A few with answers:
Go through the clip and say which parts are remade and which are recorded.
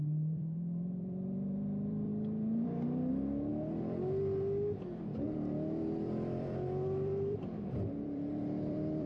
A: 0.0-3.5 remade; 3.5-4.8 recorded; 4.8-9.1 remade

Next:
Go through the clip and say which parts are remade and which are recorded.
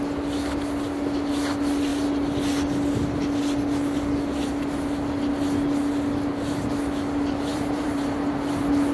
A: 0.0-7.5 recorded; 7.5-8.3 remade; 8.3-8.9 recorded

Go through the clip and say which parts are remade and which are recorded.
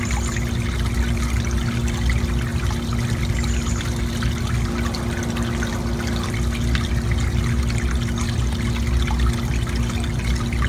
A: 0.0-10.7 recorded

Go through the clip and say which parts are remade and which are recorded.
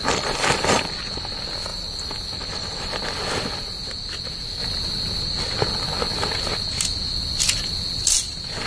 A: 0.0-0.9 remade; 0.9-1.7 recorded; 1.7-3.0 remade; 3.0-8.7 recorded